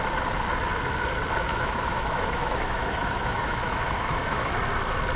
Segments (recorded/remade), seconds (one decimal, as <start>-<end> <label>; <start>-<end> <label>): 0.0-1.5 recorded; 1.5-4.5 remade; 4.5-5.2 recorded

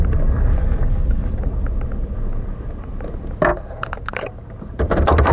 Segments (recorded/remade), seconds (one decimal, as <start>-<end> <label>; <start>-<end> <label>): 0.0-0.5 recorded; 0.5-1.3 remade; 1.3-5.3 recorded